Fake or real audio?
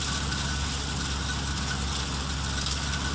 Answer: real